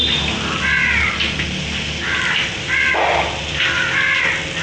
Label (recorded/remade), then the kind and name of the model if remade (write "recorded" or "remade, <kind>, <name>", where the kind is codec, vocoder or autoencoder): recorded